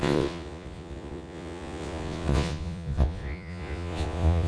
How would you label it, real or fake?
fake